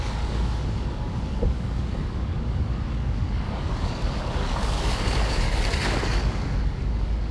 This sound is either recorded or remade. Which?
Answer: remade